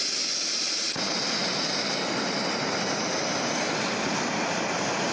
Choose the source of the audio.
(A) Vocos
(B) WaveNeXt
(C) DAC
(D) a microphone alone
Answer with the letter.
D